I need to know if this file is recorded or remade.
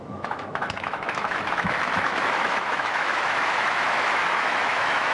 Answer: remade